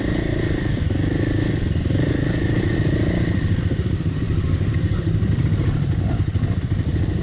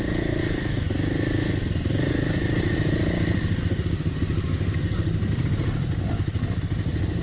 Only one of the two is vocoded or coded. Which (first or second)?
first